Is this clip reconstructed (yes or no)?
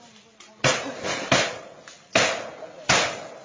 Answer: no